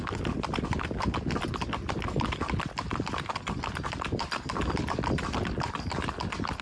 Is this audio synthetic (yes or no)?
no